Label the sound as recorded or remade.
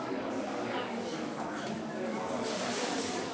remade